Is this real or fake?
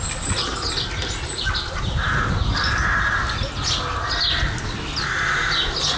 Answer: real